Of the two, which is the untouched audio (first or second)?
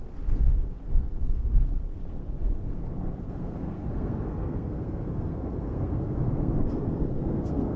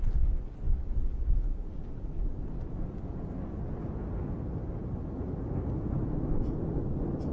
second